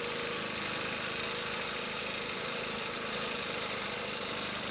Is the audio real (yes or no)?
yes